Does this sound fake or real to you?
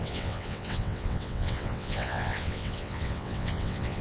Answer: fake